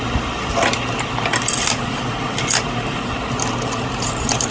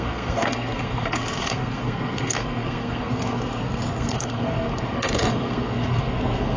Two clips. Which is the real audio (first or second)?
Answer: first